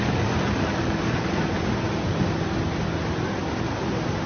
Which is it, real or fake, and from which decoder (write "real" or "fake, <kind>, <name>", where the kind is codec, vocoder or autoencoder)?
real